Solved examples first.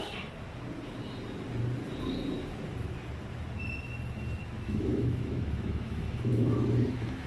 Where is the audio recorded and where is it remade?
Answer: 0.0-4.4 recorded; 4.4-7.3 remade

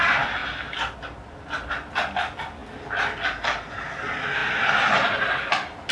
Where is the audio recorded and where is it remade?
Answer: 0.0-4.4 recorded; 4.4-5.9 remade

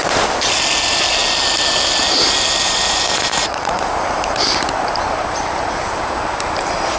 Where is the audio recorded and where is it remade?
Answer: 0.0-3.3 recorded; 3.3-3.8 remade; 3.8-7.0 recorded

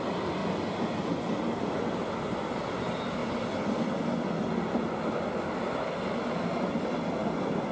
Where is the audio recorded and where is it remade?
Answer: 0.0-0.4 recorded; 0.4-1.1 remade; 1.1-7.7 recorded

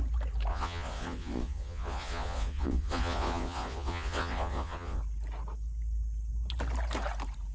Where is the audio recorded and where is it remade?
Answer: 0.0-0.5 recorded; 0.5-5.0 remade; 5.0-7.5 recorded

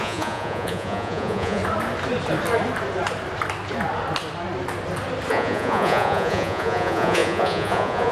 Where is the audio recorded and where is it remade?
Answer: 0.0-1.6 remade; 1.6-5.3 recorded; 5.3-8.1 remade

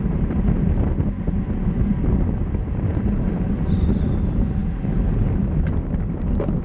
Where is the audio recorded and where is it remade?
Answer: 0.0-2.9 recorded; 2.9-3.5 remade; 3.5-6.6 recorded